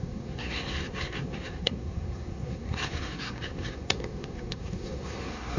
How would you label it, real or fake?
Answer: fake